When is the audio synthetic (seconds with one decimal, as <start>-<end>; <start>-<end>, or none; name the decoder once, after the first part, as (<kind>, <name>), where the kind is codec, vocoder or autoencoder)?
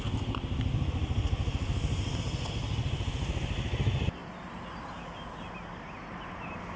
none